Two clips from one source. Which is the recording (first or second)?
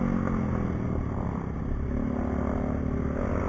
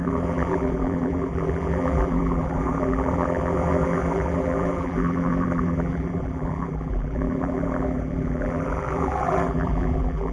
first